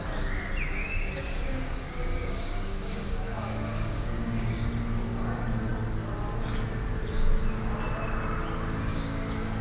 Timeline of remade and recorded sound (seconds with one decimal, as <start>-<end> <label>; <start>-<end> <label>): 0.0-0.8 recorded; 0.8-4.6 remade; 4.6-8.9 recorded; 8.9-9.6 remade